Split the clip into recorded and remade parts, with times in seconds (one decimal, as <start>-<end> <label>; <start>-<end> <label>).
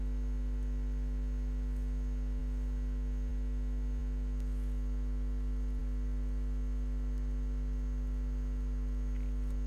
0.0-9.7 recorded